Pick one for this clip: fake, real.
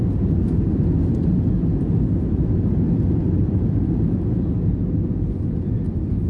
real